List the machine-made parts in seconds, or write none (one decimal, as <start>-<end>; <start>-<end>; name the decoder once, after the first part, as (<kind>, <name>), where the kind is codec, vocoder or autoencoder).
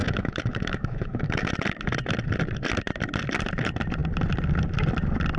0.0-1.5 (autoencoder, DAC-VAE)